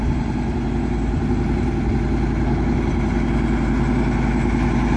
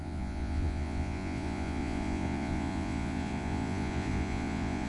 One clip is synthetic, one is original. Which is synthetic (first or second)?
second